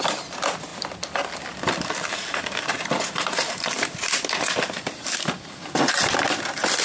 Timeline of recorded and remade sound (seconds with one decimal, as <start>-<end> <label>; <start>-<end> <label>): 0.0-6.8 remade